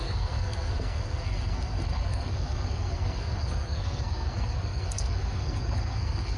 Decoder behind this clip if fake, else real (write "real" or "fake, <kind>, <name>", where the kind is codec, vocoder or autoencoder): fake, codec, SNAC